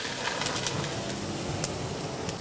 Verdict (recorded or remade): recorded